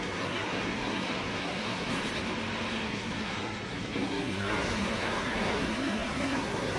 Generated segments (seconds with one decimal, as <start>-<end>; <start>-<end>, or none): 0.0-2.0; 2.7-6.8